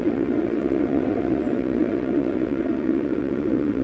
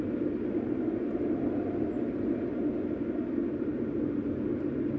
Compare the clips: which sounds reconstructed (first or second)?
first